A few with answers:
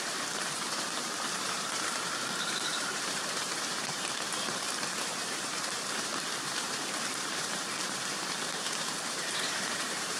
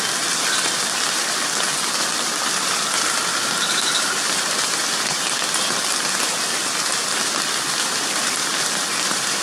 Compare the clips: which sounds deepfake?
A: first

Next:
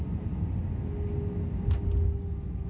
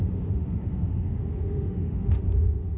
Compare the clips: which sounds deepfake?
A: second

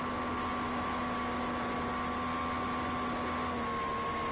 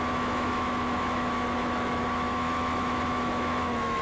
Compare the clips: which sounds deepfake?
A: second